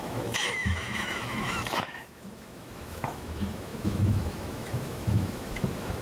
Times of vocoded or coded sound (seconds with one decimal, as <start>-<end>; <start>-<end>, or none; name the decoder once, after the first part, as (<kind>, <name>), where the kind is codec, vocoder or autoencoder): 0.0-6.0 (autoencoder, DAC-VAE)